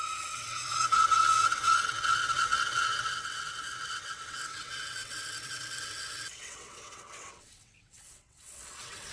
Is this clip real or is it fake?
fake